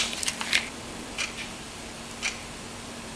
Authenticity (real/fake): fake